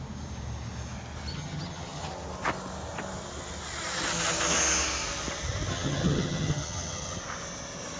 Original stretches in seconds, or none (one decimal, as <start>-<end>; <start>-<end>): 0.0-1.3; 2.1-5.7; 7.2-8.0